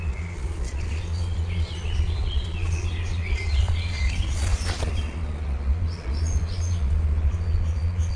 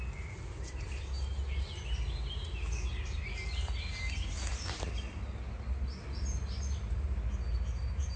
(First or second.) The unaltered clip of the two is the second